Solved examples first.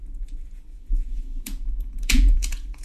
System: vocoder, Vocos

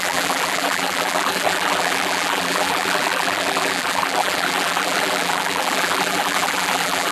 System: vocoder, BigVGAN v2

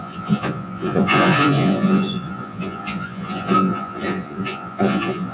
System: vocoder, Vocos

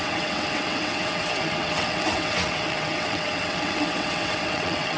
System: vocoder, WaveNeXt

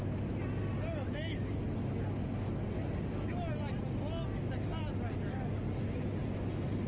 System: none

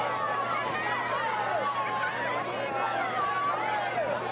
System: none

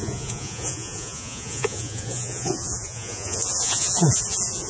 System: vocoder, Vocos